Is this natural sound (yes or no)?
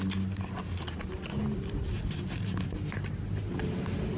yes